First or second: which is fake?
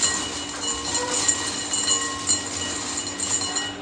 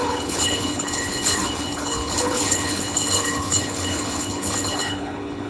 second